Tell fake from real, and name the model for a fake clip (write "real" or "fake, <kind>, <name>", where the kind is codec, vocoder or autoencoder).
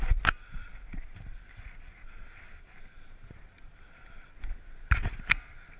real